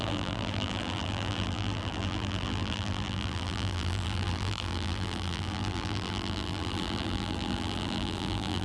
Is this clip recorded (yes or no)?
no